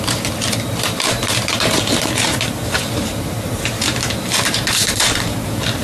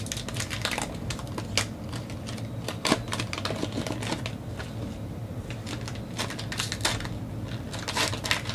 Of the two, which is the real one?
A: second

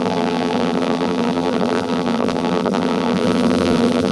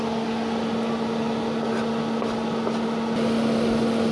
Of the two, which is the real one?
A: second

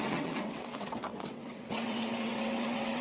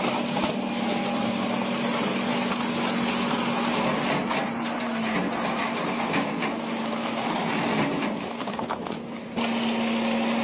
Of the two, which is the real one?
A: second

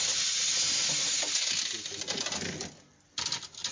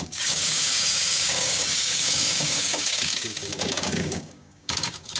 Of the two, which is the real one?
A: first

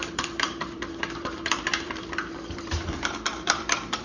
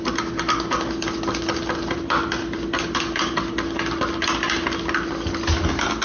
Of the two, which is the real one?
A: second